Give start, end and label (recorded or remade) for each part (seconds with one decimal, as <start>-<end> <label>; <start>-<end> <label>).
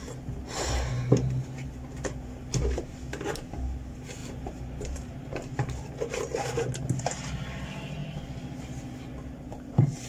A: 0.0-4.2 recorded; 4.2-5.3 remade; 5.3-10.1 recorded